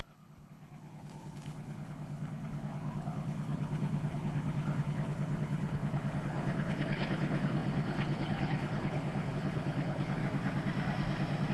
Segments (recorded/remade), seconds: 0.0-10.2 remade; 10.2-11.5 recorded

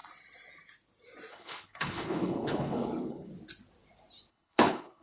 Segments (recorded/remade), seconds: 0.0-1.3 recorded; 1.3-3.3 remade; 3.3-4.3 recorded; 4.3-5.0 remade

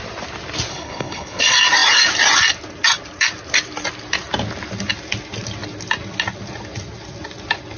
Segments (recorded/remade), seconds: 0.0-0.7 recorded; 0.7-1.4 remade; 1.4-7.8 recorded

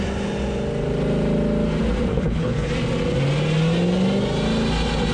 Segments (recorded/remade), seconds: 0.0-2.1 recorded; 2.1-2.7 remade; 2.7-5.1 recorded

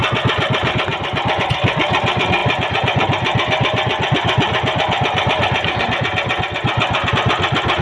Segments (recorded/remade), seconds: 0.0-7.8 recorded

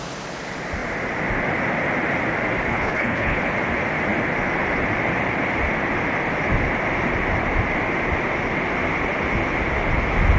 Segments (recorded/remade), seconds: 0.0-2.7 recorded; 2.7-3.4 remade; 3.4-10.4 recorded

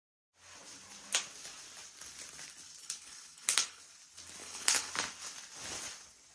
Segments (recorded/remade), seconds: 0.0-2.8 recorded; 2.8-3.8 remade; 3.8-4.4 recorded; 4.4-4.9 remade; 4.9-6.3 recorded

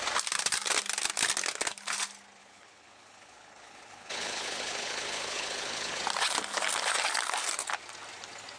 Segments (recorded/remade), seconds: 0.0-2.4 recorded; 2.4-6.0 remade; 6.0-8.6 recorded